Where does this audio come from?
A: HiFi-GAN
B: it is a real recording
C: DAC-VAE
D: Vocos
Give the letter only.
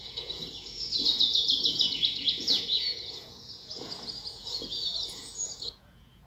D